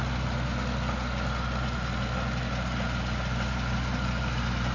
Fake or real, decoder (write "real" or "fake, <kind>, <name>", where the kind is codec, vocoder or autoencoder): real